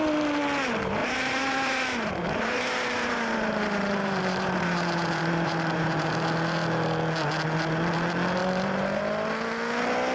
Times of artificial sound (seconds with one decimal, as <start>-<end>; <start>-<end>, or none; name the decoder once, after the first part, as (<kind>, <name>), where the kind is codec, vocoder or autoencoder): 1.0-6.1 (vocoder, BigVGAN v2); 8.4-9.0